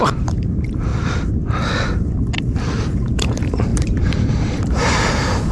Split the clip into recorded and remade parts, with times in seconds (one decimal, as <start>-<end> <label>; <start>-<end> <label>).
0.0-0.9 remade; 0.9-2.4 recorded; 2.4-5.5 remade